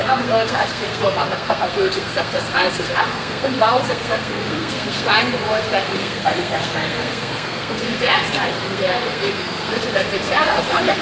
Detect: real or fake fake